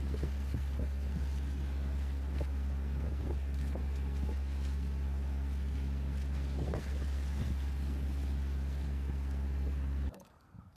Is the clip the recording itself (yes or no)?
no